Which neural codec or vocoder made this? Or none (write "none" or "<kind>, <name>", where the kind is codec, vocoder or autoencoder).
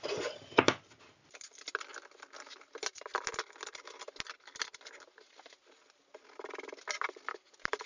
none